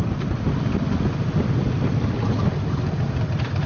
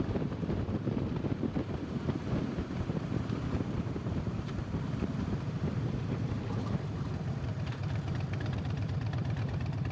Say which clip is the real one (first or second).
first